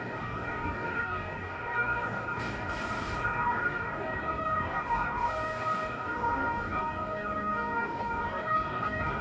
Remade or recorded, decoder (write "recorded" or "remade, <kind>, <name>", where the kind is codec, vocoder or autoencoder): remade, codec, DAC